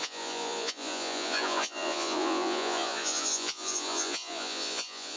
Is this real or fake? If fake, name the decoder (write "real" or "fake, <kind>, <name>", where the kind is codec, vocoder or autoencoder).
fake, vocoder, Vocos